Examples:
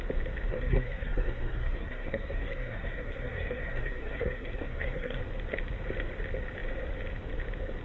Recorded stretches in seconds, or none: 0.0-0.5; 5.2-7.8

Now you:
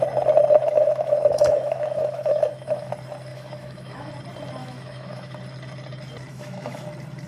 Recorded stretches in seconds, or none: 0.0-0.6; 2.9-3.3; 4.1-4.6; 5.4-6.3; 6.8-7.3

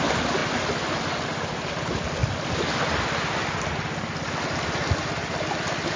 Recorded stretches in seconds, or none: 0.0-6.0